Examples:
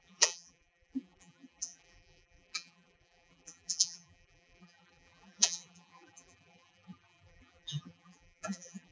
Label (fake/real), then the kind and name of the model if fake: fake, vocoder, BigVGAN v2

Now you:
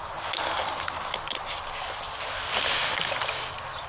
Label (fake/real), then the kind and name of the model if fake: real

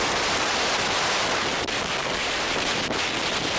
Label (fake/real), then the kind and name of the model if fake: real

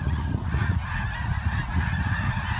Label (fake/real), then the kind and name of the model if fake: fake, vocoder, Vocos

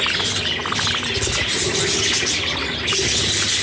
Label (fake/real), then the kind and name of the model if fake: real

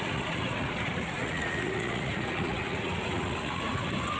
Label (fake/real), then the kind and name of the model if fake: fake, vocoder, Vocos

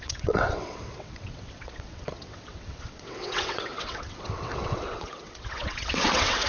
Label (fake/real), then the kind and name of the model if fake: fake, vocoder, WaveNeXt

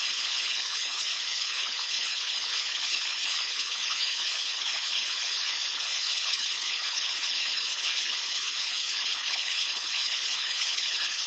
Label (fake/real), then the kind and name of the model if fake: fake, codec, HILCodec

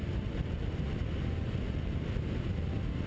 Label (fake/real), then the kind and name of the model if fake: real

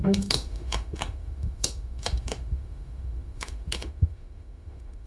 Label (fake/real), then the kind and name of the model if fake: fake, autoencoder, DAC-VAE